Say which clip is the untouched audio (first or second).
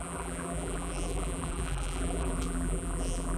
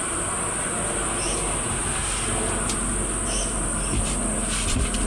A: second